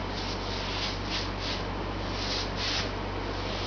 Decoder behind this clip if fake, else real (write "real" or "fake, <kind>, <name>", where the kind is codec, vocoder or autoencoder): real